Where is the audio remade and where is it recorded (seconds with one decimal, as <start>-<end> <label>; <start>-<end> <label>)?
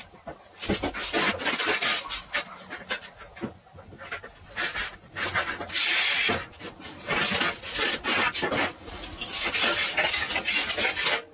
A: 0.0-11.3 recorded